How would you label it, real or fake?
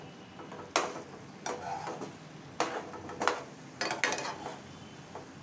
real